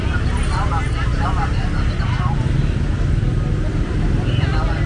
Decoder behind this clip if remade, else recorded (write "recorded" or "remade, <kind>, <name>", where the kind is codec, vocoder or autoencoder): recorded